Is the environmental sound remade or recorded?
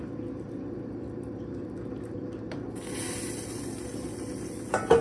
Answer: recorded